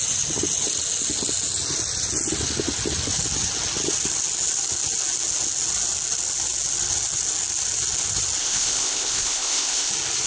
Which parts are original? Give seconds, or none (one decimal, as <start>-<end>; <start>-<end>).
0.0-8.4; 9.9-10.3